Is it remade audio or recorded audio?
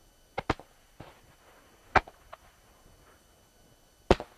recorded